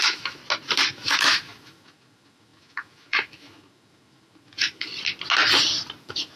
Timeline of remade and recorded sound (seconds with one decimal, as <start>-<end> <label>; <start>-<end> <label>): 0.0-0.4 remade; 0.4-0.9 recorded; 0.9-4.9 remade; 4.9-6.0 recorded; 6.0-6.4 remade